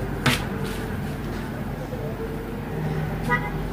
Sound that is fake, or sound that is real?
real